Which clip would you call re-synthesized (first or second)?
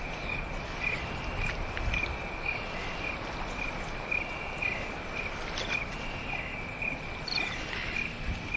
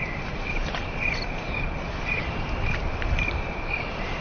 second